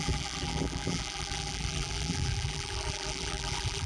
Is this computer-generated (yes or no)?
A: yes